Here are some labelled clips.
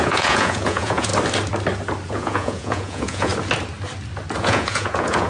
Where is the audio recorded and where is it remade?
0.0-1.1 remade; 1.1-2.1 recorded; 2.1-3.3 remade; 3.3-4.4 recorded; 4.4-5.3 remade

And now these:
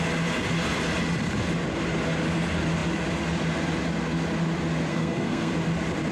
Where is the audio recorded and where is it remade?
0.0-4.9 recorded; 4.9-5.5 remade; 5.5-6.1 recorded

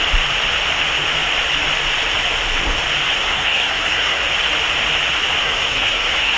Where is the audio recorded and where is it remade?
0.0-3.1 recorded; 3.1-4.2 remade; 4.2-5.4 recorded; 5.4-6.4 remade

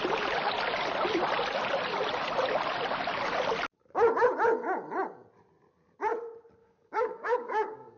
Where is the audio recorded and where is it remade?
0.0-6.6 recorded; 6.6-8.0 remade

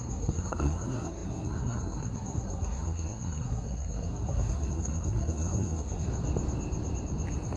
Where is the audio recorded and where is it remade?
0.0-6.1 remade; 6.1-7.6 recorded

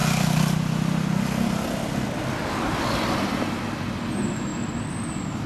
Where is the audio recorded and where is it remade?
0.0-5.5 recorded

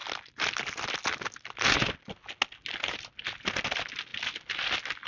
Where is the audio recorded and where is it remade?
0.0-5.1 recorded